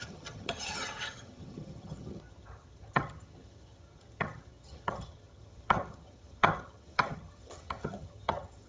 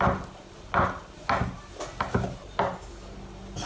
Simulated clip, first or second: first